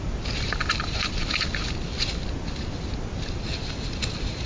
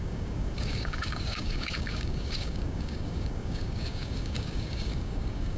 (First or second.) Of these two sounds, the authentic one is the first